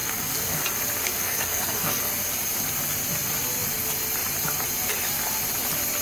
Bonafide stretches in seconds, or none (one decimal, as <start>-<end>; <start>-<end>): 0.6-1.0; 2.0-6.0